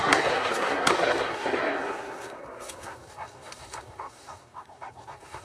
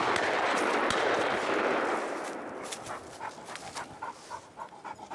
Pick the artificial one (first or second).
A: first